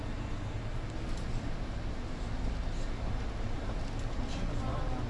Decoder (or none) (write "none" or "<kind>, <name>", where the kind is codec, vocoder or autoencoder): none